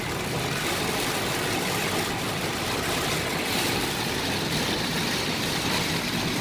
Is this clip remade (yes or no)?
no